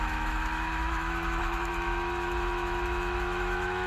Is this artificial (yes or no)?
yes